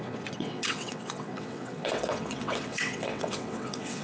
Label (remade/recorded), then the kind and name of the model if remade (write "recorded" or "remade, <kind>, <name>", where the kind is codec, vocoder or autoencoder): remade, vocoder, WaveNeXt